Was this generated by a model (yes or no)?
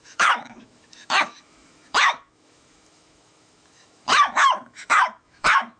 yes